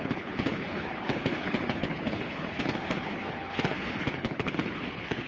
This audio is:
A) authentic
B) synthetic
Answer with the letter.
B